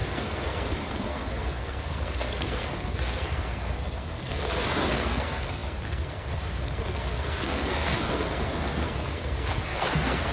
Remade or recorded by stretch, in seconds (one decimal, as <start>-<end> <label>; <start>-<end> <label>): 0.0-10.3 remade